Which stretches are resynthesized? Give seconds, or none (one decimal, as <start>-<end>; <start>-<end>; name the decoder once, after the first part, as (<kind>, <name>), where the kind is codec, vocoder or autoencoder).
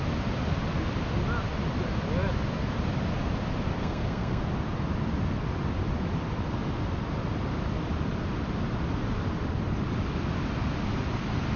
3.8-4.4 (codec, SNAC)